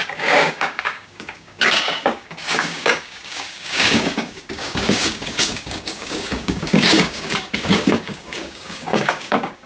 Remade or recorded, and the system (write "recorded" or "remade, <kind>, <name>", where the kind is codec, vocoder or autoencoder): remade, codec, DAC